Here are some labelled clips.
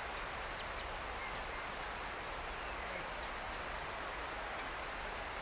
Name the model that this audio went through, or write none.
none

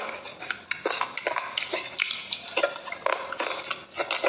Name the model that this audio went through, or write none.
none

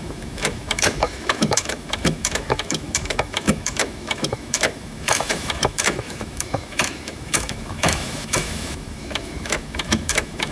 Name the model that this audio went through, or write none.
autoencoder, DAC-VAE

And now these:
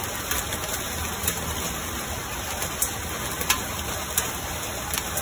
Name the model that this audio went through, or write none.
none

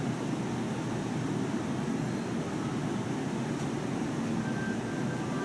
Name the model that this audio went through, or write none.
none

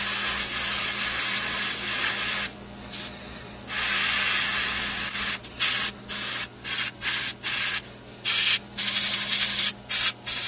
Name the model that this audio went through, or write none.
none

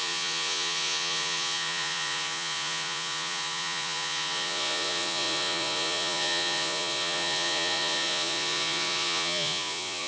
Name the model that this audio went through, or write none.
vocoder, Vocos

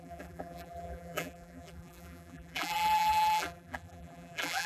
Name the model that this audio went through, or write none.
vocoder, BigVGAN v2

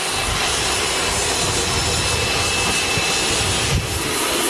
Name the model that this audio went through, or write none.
none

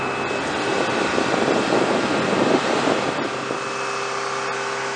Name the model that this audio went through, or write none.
none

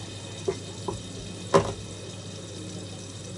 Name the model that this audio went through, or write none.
none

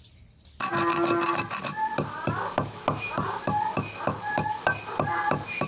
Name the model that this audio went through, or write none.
none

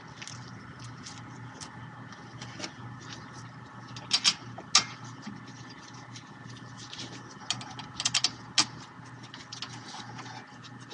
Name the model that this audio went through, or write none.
none